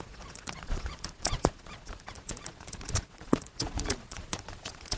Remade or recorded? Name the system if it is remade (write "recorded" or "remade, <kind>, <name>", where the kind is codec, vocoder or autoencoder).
remade, vocoder, Vocos